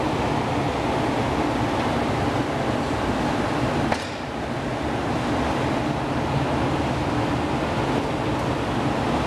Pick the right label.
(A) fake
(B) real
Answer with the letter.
B